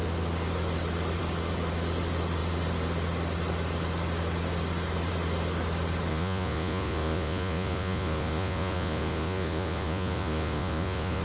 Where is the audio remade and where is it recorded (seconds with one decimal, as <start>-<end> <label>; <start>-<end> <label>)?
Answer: 0.0-6.1 recorded; 6.1-11.2 remade